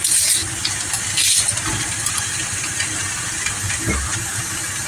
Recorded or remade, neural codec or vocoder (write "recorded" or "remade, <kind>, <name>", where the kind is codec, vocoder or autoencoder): recorded